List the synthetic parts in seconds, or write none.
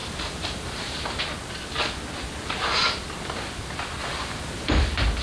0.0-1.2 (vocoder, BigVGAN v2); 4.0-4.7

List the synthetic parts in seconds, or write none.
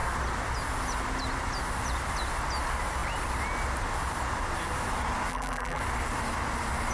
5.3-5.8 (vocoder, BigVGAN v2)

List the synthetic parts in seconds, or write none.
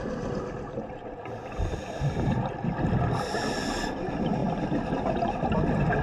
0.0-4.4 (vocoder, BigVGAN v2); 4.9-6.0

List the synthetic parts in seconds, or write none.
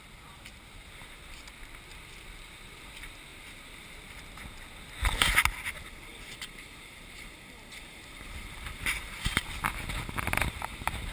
3.3-4.1 (vocoder, BigVGAN v2); 6.1-9.5; 10.4-11.1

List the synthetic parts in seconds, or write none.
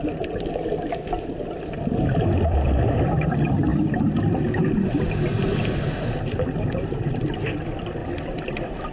none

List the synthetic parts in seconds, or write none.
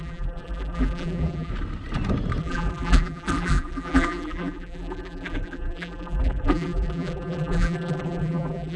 0.0-1.5 (vocoder, BigVGAN v2); 2.4-8.8